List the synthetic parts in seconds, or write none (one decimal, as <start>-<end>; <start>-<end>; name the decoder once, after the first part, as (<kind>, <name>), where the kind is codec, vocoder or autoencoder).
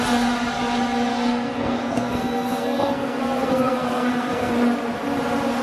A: 1.1-4.5 (codec, SNAC)